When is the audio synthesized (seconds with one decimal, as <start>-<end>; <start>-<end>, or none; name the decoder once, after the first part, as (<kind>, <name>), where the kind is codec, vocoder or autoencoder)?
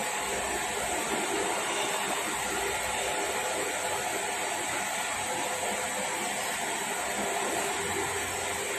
none